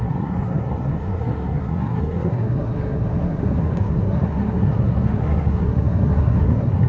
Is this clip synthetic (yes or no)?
yes